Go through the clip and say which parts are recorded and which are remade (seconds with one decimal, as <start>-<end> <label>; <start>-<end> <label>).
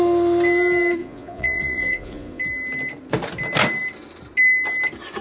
0.0-1.0 recorded; 1.0-2.4 remade; 2.4-5.2 recorded